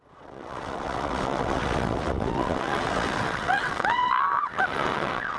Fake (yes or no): yes